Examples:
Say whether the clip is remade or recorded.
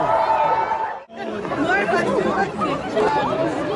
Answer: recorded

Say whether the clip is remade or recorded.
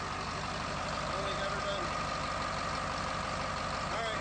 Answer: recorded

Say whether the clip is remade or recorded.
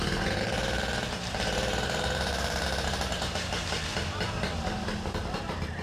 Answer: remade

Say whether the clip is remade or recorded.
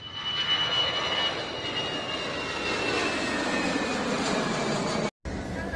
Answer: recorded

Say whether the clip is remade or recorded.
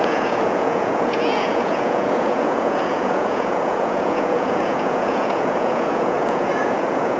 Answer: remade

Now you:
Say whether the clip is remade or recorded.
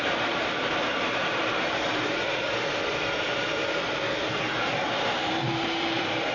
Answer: remade